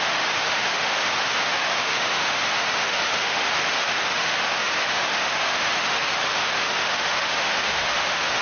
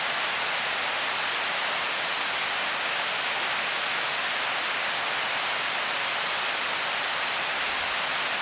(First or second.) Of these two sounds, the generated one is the first